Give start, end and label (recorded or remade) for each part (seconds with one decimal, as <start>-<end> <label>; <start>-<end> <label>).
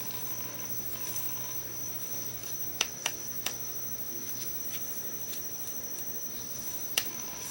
0.0-4.6 remade; 4.6-6.3 recorded; 6.3-7.5 remade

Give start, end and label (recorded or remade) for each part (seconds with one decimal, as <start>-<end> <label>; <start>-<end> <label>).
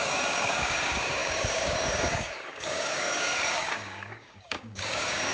0.0-5.3 remade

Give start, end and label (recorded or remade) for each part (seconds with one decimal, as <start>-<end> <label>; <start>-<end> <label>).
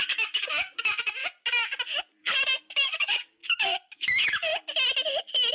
0.0-1.2 remade; 1.2-2.2 recorded; 2.2-4.5 remade; 4.5-5.5 recorded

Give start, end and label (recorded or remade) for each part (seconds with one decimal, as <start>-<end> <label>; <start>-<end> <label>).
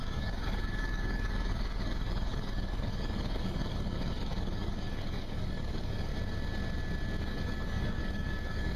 0.0-6.1 remade; 6.1-7.2 recorded; 7.2-8.8 remade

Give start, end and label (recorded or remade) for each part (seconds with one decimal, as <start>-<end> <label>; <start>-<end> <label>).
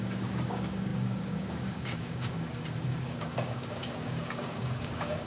0.0-5.3 remade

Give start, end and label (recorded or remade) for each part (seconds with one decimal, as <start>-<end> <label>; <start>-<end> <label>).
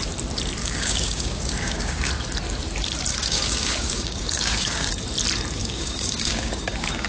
0.0-0.6 recorded; 0.6-2.1 remade; 2.1-3.1 recorded; 3.1-4.9 remade; 4.9-5.6 recorded; 5.6-7.1 remade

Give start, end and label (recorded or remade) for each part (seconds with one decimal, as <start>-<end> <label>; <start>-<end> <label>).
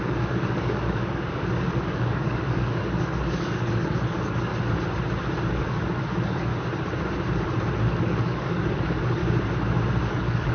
0.0-4.5 remade; 4.5-5.5 recorded; 5.5-6.5 remade; 6.5-7.9 recorded; 7.9-9.2 remade; 9.2-10.1 recorded; 10.1-10.5 remade